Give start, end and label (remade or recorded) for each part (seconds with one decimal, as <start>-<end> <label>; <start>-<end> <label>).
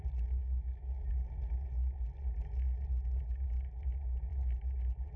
0.0-0.4 recorded; 0.4-1.1 remade; 1.1-5.2 recorded